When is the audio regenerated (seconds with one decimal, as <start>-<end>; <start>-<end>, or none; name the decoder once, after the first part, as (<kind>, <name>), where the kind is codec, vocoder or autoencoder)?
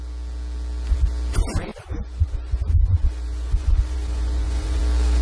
1.7-4.8 (vocoder, Vocos)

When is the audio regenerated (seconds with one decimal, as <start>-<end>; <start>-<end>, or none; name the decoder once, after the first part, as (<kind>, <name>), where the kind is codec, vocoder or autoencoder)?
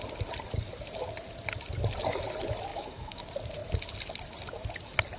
2.7-3.2 (autoencoder, DAC-VAE)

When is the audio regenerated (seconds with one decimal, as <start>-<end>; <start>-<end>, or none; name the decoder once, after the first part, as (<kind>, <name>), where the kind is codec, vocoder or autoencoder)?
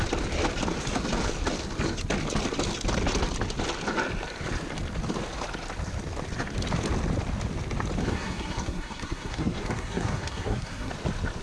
8.0-10.9 (codec, SNAC)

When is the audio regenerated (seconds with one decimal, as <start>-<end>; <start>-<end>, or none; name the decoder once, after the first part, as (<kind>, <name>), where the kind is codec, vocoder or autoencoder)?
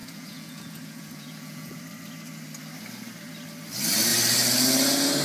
0.0-1.8 (vocoder, Vocos)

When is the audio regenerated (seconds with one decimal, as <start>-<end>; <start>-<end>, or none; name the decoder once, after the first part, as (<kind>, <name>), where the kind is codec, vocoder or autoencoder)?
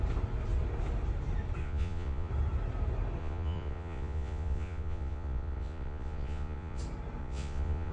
1.6-2.3 (vocoder, Vocos); 3.2-6.8; 7.2-7.9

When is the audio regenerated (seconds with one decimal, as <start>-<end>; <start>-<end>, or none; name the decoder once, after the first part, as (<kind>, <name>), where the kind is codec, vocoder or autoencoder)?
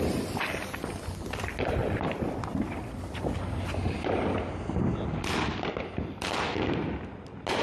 none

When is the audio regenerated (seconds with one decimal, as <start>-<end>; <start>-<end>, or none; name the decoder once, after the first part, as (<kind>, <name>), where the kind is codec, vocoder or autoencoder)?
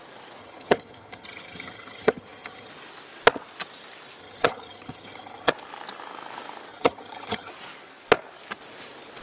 0.4-2.7 (vocoder, HiFi-GAN); 4.2-5.5; 6.7-7.5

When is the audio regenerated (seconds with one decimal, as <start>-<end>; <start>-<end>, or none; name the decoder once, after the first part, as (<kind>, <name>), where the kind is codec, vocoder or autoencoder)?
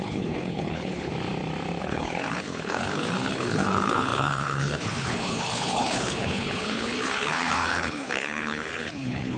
0.0-1.1 (codec, HILCodec); 1.8-9.4